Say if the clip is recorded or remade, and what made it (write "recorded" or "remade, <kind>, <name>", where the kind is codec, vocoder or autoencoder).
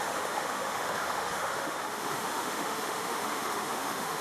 remade, autoencoder, DAC-VAE